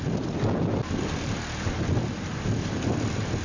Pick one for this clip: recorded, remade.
recorded